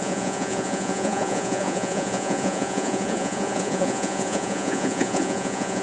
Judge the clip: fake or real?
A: fake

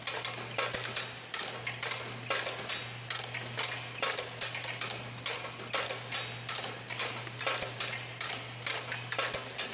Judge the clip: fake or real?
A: real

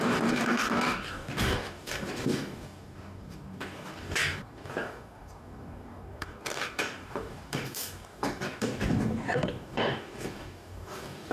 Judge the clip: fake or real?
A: fake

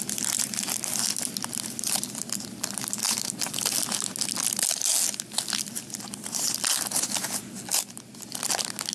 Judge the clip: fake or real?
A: real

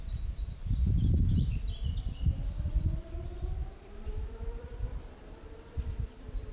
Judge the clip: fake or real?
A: fake